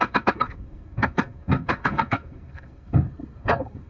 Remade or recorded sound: remade